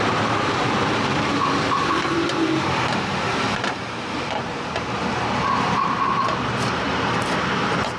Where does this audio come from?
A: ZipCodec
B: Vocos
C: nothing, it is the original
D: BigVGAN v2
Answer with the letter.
D